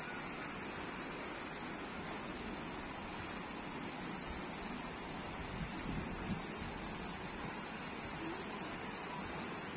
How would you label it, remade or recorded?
recorded